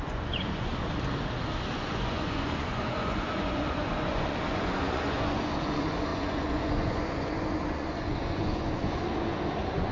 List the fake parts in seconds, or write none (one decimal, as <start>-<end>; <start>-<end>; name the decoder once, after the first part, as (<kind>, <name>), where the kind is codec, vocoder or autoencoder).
0.0-0.7 (vocoder, Vocos); 1.7-9.9